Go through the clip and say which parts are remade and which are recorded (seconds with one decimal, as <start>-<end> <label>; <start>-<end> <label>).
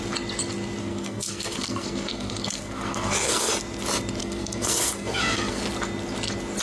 0.0-0.8 recorded; 0.8-3.5 remade; 3.5-4.2 recorded; 4.2-5.6 remade; 5.6-6.6 recorded